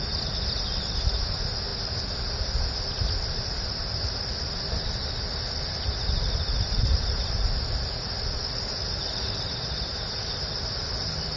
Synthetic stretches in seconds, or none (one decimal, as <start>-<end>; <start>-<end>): none